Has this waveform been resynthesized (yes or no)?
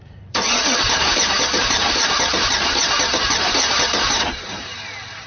yes